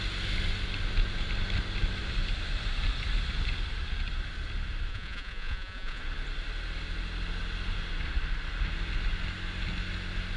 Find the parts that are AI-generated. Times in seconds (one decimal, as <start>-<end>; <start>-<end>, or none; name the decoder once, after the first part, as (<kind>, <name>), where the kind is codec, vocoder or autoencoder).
4.9-6.0 (vocoder, Vocos)